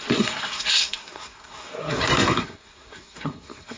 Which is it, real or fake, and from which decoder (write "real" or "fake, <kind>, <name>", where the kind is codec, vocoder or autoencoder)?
fake, codec, SNAC